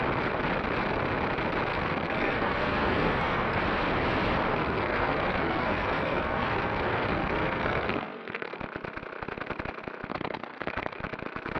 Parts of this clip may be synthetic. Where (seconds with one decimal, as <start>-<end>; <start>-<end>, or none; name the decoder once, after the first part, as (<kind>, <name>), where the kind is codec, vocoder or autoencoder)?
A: 1.7-3.6 (codec, SNAC); 4.5-8.6; 10.1-11.0